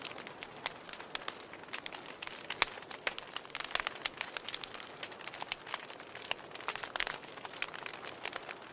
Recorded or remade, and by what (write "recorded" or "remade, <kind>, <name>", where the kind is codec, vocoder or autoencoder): recorded